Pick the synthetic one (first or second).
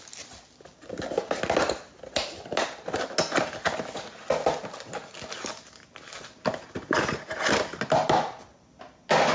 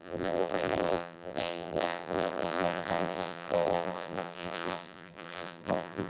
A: second